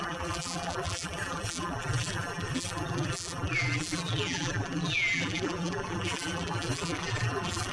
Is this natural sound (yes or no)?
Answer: no